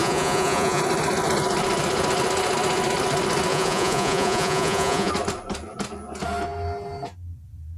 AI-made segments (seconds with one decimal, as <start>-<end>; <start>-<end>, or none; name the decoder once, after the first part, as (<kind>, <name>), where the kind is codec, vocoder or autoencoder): 0.0-0.8 (vocoder, Vocos); 3.5-5.1